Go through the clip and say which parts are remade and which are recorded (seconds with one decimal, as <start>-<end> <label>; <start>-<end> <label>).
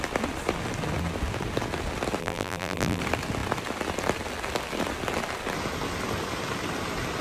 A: 0.0-2.2 recorded; 2.2-3.0 remade; 3.0-7.2 recorded